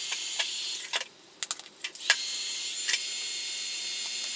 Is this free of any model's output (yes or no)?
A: yes